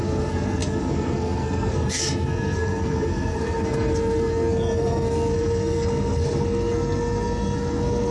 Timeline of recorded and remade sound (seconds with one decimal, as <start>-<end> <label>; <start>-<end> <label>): 0.0-8.1 remade